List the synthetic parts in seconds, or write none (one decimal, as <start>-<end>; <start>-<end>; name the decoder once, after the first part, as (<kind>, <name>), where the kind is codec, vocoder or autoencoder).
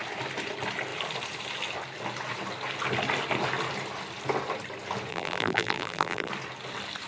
5.1-6.3 (vocoder, BigVGAN v2)